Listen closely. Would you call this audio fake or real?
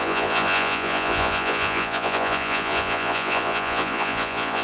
fake